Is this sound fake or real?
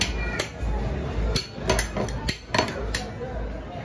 real